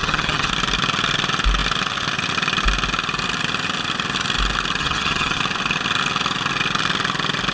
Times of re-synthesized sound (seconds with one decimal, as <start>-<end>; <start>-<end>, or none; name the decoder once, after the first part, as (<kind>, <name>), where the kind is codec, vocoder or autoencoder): 0.0-0.5 (vocoder, HiFi-GAN); 4.8-5.4